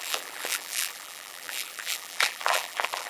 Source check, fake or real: fake